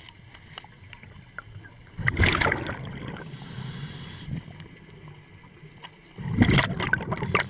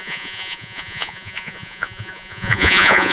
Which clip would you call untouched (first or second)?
first